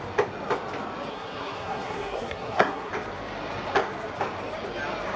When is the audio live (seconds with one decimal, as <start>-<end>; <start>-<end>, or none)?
0.0-1.1; 2.9-5.2